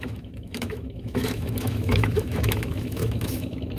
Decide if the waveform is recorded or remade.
remade